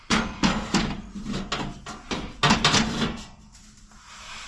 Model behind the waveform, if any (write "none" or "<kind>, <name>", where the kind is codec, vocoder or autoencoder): none